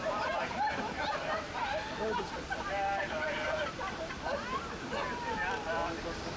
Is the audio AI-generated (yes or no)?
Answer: yes